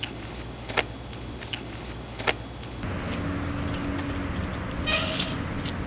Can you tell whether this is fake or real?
real